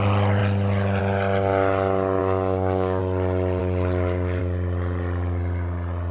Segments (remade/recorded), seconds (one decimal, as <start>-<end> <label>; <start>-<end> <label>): 0.0-2.2 recorded; 2.2-3.0 remade; 3.0-3.6 recorded; 3.6-4.4 remade; 4.4-6.1 recorded